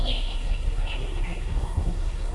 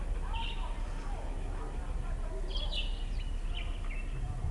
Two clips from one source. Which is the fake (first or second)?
first